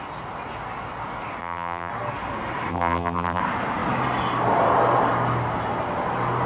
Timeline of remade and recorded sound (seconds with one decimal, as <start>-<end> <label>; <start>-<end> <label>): 0.0-1.4 recorded; 1.4-1.9 remade; 1.9-2.7 recorded; 2.7-3.4 remade; 3.4-6.5 recorded